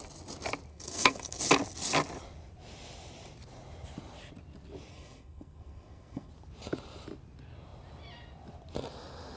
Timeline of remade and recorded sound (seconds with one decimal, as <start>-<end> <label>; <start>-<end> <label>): 0.0-0.7 recorded; 0.7-1.4 remade; 1.4-4.9 recorded; 4.9-6.3 remade; 6.3-9.4 recorded